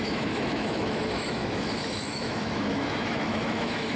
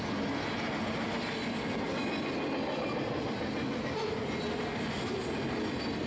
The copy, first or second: first